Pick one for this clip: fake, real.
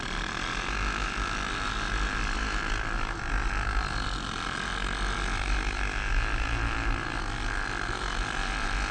real